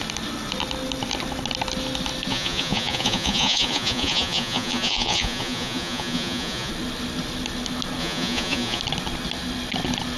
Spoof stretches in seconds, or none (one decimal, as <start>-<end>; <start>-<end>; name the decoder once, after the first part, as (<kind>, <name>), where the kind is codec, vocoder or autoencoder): 2.3-6.7 (vocoder, Vocos); 8.0-8.8

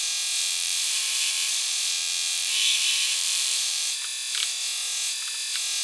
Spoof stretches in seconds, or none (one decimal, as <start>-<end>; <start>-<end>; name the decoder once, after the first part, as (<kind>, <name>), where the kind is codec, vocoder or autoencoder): 0.4-3.9 (vocoder, BigVGAN v2)